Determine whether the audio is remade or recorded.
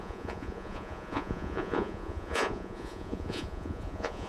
remade